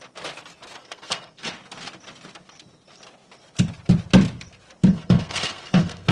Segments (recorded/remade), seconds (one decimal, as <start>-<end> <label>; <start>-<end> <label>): 0.0-0.8 recorded; 0.8-1.5 remade; 1.5-4.9 recorded; 4.9-6.1 remade